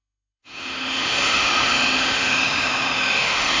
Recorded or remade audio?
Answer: remade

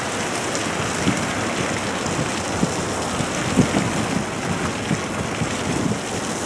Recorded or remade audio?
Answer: recorded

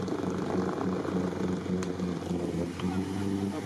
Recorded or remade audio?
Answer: recorded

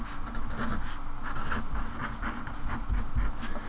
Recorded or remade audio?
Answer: recorded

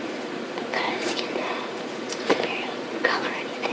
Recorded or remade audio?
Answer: remade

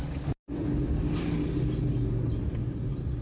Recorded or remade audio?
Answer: recorded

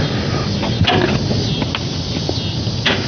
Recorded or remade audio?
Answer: recorded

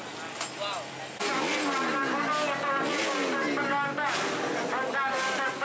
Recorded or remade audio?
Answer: recorded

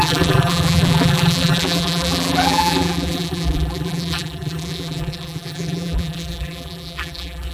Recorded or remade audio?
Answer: remade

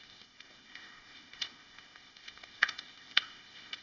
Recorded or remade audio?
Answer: remade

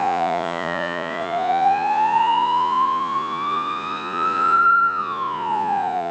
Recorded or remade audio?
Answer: remade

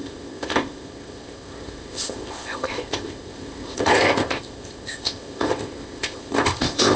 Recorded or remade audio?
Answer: remade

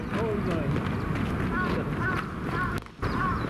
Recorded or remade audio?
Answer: recorded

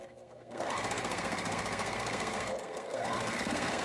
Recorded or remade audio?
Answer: remade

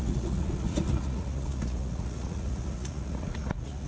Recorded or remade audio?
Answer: remade